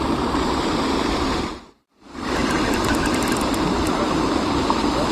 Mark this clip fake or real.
real